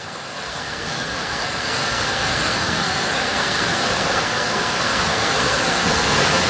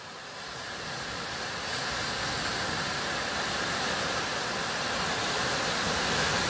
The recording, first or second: second